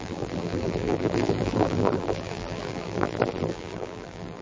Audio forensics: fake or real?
fake